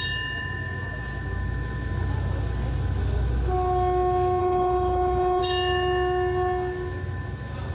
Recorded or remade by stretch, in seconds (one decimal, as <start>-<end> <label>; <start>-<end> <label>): 0.0-4.4 recorded; 4.4-5.4 remade; 5.4-7.7 recorded